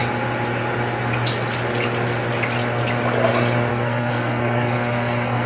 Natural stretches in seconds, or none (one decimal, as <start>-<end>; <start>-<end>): 0.0-3.7